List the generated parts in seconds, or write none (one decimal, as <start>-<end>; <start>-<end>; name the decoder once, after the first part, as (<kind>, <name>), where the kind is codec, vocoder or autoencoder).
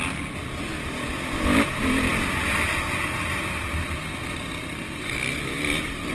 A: none